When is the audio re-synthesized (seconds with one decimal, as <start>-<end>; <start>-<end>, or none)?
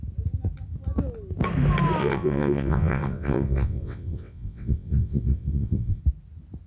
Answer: 2.0-6.0